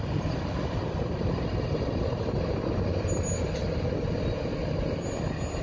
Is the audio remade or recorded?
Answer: recorded